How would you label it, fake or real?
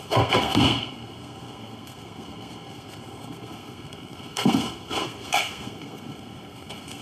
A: fake